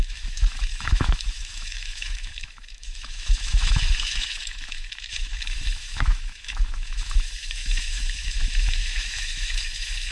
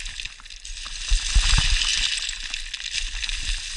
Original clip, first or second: second